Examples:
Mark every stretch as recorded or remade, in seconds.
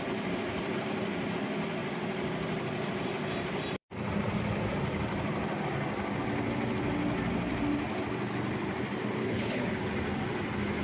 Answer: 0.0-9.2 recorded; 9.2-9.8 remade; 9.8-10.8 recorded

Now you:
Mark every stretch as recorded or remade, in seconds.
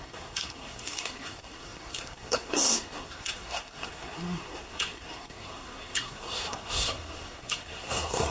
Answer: 0.0-8.3 remade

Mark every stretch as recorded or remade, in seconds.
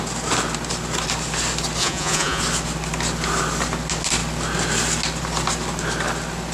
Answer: 0.0-1.8 recorded; 1.8-2.4 remade; 2.4-6.5 recorded